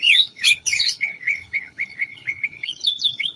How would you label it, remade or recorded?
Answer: remade